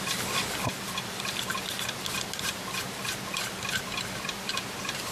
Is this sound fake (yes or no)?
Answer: no